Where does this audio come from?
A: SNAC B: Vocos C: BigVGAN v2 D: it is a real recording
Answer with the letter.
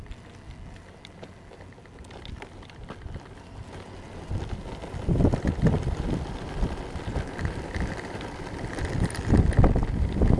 D